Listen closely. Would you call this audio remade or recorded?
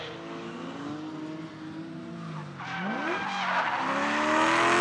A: recorded